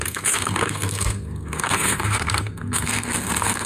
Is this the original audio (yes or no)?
no